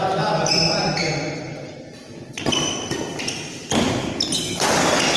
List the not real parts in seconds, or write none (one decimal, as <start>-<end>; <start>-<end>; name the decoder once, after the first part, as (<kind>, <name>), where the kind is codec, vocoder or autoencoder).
none